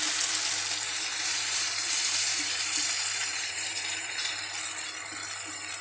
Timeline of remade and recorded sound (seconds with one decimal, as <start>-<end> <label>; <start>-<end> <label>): 0.0-1.1 recorded; 1.1-4.3 remade; 4.3-5.8 recorded